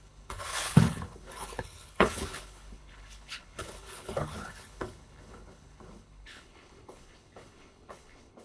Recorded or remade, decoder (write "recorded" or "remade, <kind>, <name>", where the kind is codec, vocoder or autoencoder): remade, codec, HILCodec